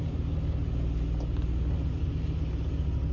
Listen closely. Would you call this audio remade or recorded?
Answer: recorded